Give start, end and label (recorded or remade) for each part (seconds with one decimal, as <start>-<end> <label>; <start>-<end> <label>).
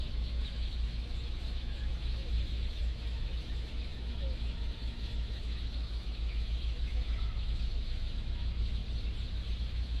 0.0-8.8 remade; 8.8-9.6 recorded; 9.6-10.0 remade